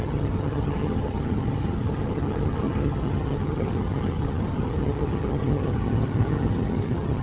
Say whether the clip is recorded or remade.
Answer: remade